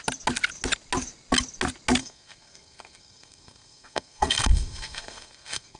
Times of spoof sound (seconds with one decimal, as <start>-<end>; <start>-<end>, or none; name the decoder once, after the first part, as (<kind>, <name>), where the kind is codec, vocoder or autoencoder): 2.0-5.8 (codec, SNAC)